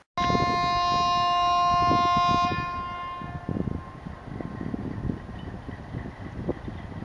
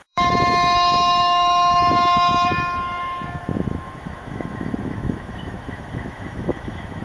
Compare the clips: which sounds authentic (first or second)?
first